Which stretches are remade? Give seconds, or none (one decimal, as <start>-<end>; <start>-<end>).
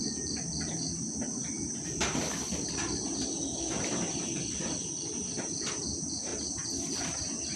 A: 0.0-6.3